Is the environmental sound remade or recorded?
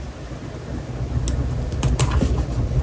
recorded